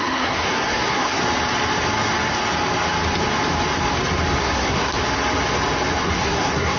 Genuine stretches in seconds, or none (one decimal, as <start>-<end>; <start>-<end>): 1.2-4.4; 4.9-6.0